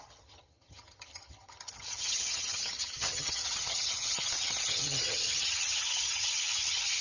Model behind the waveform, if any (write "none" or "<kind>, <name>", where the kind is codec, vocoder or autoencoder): vocoder, HiFi-GAN